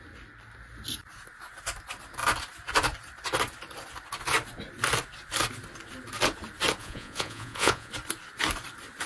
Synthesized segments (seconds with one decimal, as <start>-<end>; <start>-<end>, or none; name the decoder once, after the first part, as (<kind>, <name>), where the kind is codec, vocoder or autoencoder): 6.8-7.9 (vocoder, Vocos)